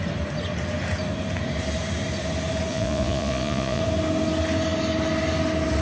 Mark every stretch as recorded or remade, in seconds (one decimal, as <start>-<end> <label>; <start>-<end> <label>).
0.0-2.7 recorded; 2.7-3.8 remade; 3.8-5.8 recorded

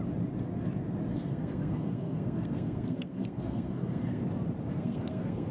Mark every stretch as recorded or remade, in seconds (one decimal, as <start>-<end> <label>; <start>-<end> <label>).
0.0-1.1 recorded; 1.1-4.2 remade; 4.2-4.7 recorded; 4.7-5.5 remade

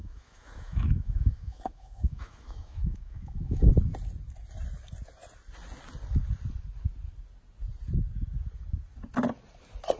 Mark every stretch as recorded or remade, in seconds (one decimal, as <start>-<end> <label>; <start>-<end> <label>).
0.0-3.7 remade; 3.7-10.0 recorded

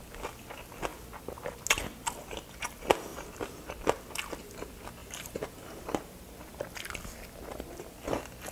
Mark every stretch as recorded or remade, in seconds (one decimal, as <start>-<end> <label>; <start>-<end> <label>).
0.0-5.0 recorded; 5.0-6.6 remade; 6.6-8.5 recorded

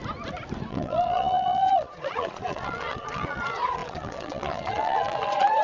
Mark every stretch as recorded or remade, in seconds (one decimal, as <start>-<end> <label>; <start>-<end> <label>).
0.0-0.7 recorded; 0.7-5.6 remade

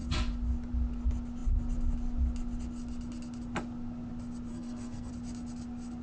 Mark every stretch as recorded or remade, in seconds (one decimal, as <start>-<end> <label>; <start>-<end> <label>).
0.0-4.5 recorded; 4.5-5.1 remade; 5.1-6.0 recorded